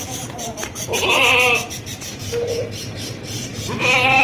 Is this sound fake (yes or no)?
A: yes